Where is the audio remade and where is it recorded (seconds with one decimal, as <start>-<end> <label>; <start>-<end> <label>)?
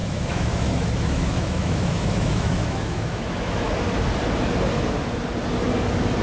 0.0-3.7 remade; 3.7-6.2 recorded